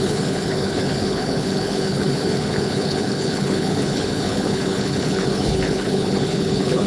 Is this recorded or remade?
remade